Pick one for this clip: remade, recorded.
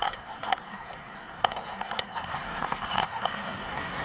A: remade